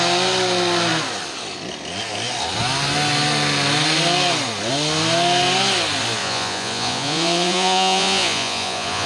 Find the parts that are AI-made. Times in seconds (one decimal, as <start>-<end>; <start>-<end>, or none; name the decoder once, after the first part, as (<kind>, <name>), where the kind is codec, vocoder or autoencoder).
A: 6.2-9.1 (vocoder, Vocos)